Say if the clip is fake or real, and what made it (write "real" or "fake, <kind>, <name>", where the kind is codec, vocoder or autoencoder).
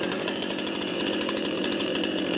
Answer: fake, vocoder, Vocos